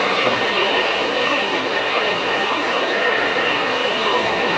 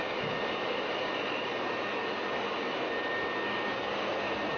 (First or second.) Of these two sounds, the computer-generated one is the first